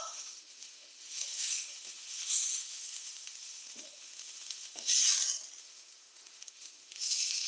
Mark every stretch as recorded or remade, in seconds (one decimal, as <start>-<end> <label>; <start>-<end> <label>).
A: 0.0-4.9 remade; 4.9-5.6 recorded; 5.6-7.5 remade